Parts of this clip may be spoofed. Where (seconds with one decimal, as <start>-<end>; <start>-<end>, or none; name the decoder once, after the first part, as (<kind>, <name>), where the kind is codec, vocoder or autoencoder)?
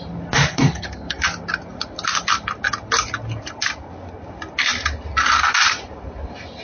0.5-1.2 (codec, SNAC)